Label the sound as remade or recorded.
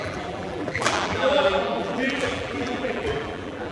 remade